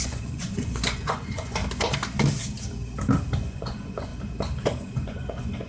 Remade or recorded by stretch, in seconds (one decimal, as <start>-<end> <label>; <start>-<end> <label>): 0.0-1.6 remade; 1.6-3.4 recorded; 3.4-4.1 remade; 4.1-4.8 recorded; 4.8-5.7 remade